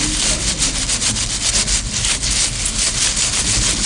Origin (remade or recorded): recorded